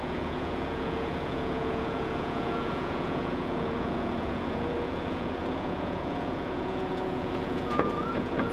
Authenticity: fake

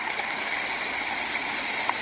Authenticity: real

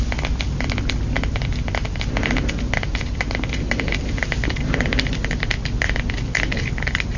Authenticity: real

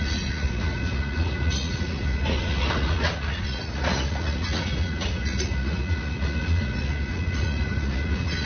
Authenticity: fake